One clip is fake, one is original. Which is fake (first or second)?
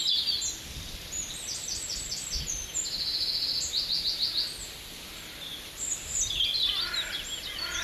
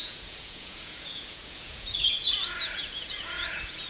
second